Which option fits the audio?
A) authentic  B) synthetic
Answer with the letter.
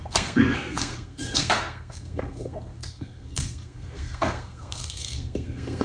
B